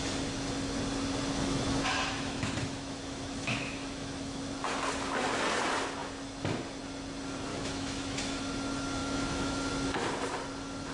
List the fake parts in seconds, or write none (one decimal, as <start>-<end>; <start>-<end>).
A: 1.3-4.4; 7.5-8.4; 9.0-9.7